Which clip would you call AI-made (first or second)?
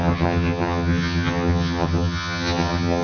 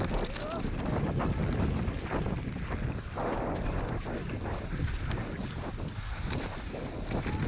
first